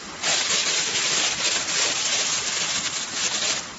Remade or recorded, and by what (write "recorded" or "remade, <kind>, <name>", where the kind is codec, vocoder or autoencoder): remade, vocoder, BigVGAN v2